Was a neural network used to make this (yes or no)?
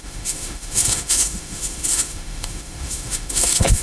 yes